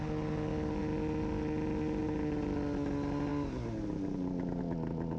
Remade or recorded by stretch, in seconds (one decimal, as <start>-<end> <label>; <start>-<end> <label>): 0.0-5.2 recorded